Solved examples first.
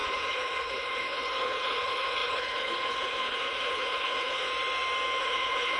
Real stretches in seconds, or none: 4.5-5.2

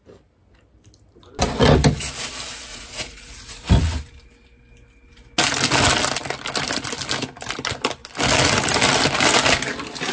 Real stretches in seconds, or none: 0.0-2.7; 4.0-10.1